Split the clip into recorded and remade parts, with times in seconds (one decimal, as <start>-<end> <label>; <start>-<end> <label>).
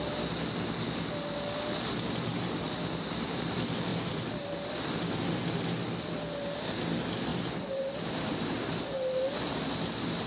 0.0-3.9 recorded; 3.9-4.5 remade; 4.5-7.3 recorded; 7.3-8.3 remade; 8.3-10.3 recorded